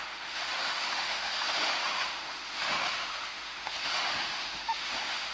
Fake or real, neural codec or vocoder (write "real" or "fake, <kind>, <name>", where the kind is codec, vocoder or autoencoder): fake, autoencoder, DAC-VAE